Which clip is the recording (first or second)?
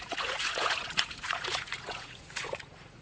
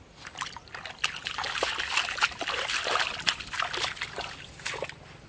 second